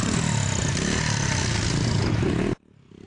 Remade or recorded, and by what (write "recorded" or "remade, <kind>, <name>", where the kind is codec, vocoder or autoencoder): recorded